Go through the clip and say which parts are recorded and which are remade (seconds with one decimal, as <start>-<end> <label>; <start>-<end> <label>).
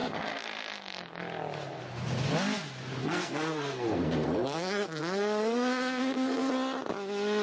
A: 0.0-1.2 remade; 1.2-3.0 recorded; 3.0-6.5 remade; 6.5-7.4 recorded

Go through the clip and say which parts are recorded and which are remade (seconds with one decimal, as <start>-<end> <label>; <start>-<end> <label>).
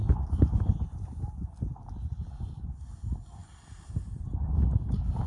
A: 0.0-5.3 recorded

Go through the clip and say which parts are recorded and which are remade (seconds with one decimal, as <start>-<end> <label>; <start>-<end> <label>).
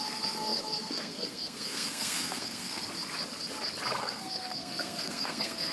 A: 0.0-2.8 remade; 2.8-4.0 recorded; 4.0-5.7 remade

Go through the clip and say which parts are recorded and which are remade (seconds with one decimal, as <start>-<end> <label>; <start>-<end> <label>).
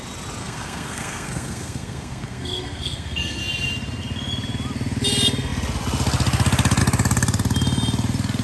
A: 0.0-0.4 recorded; 0.4-3.4 remade; 3.4-8.4 recorded